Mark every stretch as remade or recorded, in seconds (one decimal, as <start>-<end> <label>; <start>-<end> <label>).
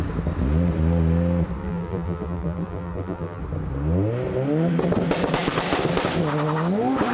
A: 0.0-1.6 recorded; 1.6-3.4 remade; 3.4-7.1 recorded